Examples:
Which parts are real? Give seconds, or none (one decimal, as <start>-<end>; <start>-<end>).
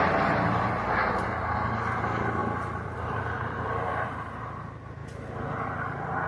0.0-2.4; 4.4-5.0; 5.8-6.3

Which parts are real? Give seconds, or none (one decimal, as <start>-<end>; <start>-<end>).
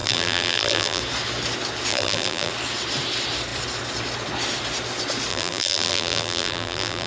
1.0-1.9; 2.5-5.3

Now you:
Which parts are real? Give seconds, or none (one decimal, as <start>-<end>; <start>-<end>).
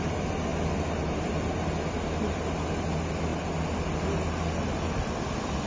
0.0-5.7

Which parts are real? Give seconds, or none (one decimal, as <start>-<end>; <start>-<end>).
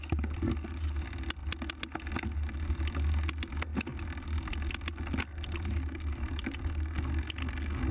0.0-7.9